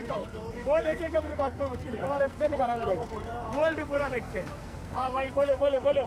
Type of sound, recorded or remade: remade